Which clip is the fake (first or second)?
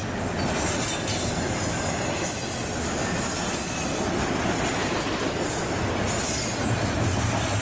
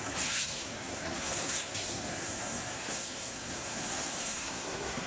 second